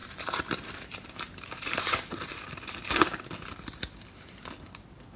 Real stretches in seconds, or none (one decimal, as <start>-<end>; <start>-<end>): 2.7-5.2